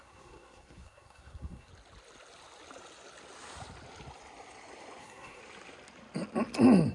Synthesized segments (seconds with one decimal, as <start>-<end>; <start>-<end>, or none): 0.0-1.7; 5.0-5.4